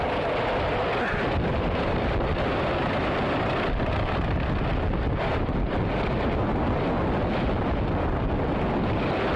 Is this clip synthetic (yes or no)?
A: no